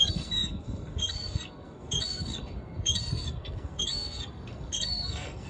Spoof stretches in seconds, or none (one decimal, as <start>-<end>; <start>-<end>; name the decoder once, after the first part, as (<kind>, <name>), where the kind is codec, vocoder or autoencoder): 0.0-5.5 (codec, SNAC)